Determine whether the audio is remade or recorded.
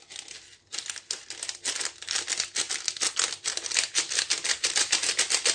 recorded